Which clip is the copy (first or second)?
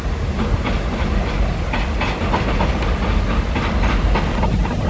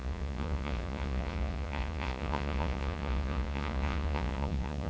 second